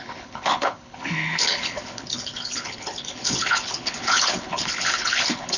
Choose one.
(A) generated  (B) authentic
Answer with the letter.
A